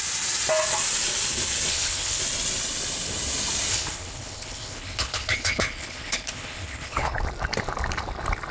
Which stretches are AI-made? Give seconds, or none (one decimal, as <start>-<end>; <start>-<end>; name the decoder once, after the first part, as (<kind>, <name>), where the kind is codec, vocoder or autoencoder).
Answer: 1.7-2.2 (codec, HILCodec); 3.7-7.2

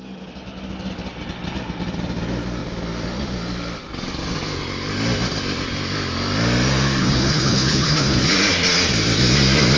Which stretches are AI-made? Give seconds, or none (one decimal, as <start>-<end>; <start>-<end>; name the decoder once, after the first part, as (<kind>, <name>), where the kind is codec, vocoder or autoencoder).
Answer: 7.0-8.2 (codec, HILCodec)

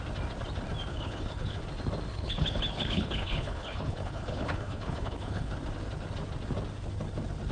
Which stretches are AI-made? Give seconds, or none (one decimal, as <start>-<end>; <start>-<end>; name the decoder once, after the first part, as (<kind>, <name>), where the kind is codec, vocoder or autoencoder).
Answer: 0.9-1.6 (codec, HILCodec); 2.1-5.5

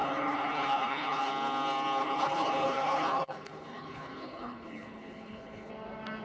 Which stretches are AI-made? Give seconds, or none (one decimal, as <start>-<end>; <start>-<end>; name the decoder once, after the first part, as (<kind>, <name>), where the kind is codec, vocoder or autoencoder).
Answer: 0.0-1.3 (codec, HILCodec); 2.0-5.7

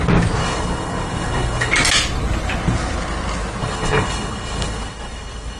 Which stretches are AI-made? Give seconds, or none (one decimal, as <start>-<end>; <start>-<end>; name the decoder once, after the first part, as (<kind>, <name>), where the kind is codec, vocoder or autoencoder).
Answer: 0.4-1.7 (codec, HILCodec); 3.6-5.6

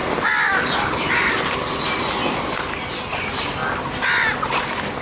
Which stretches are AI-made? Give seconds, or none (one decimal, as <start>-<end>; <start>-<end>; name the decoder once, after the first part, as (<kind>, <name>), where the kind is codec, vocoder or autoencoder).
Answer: none

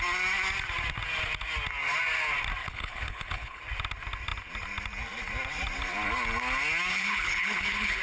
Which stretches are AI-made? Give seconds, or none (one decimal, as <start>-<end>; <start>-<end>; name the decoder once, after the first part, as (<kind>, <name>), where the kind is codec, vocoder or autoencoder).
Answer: 2.6-3.6 (codec, HILCodec); 6.9-8.0